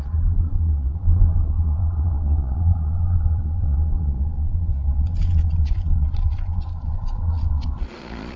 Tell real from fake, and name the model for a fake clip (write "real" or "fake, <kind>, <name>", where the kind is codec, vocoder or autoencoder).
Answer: fake, vocoder, Vocos